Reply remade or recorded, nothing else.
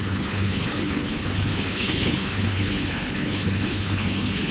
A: remade